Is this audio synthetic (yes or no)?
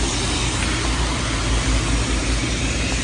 no